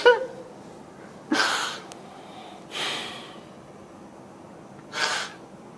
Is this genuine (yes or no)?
yes